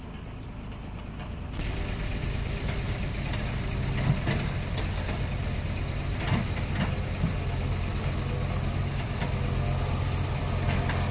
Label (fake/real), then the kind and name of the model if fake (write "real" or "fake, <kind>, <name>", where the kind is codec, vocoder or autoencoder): real